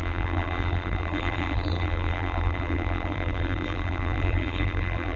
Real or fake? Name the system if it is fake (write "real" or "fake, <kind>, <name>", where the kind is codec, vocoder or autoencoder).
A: fake, vocoder, BigVGAN v2